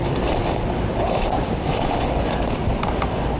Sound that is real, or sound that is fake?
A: real